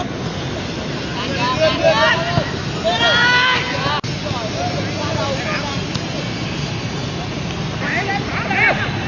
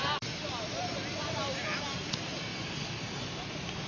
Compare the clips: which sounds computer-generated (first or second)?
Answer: second